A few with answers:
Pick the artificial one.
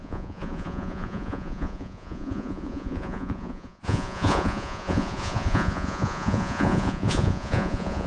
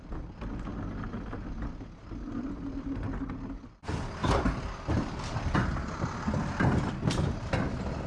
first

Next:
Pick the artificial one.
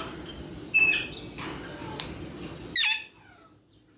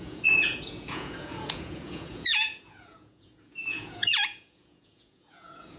second